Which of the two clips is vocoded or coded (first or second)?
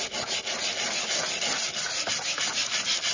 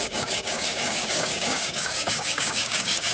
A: second